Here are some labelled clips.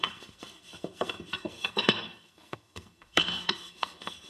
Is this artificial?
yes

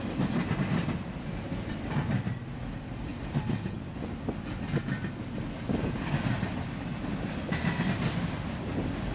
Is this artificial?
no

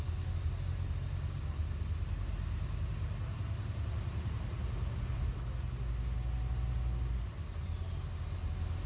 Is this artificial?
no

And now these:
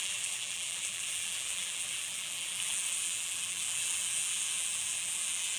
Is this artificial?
yes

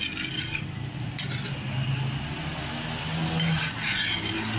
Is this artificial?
no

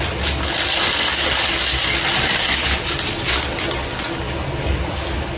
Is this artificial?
no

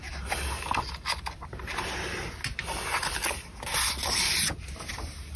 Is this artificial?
no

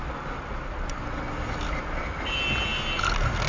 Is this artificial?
no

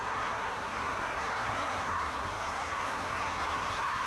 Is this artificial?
yes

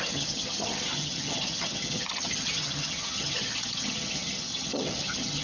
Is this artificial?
yes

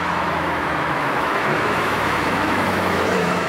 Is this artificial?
yes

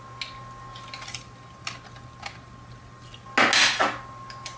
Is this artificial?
no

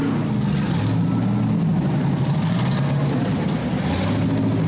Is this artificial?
no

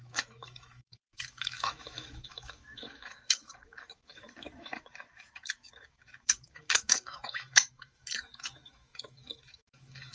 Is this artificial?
yes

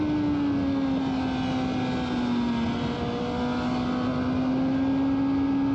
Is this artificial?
no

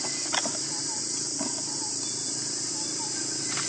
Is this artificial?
no